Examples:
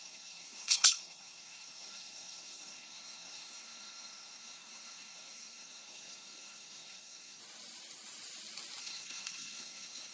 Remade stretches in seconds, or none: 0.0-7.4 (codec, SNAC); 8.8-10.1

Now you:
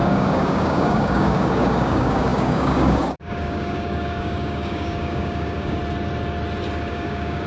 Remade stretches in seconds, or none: 0.0-5.8 (codec, DAC); 6.9-7.5

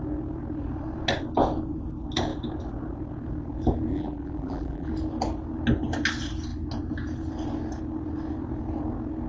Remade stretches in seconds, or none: 3.9-4.9 (vocoder, BigVGAN v2)

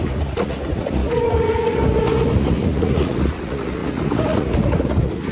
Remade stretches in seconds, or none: 0.0-5.3 (vocoder, Vocos)